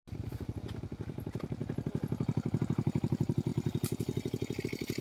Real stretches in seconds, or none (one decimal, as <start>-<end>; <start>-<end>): 0.0-5.0